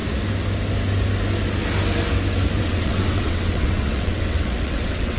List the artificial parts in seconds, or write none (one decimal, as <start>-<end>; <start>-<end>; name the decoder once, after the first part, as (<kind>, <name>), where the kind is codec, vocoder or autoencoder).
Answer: 2.6-5.2 (vocoder, WaveNeXt)